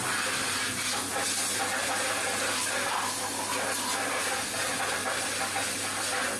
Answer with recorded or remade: recorded